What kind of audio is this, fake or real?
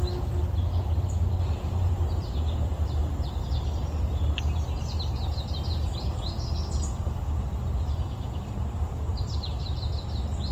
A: real